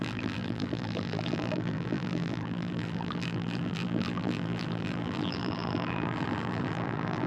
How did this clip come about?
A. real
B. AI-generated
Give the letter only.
B